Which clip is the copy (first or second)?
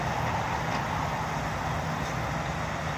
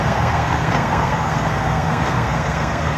second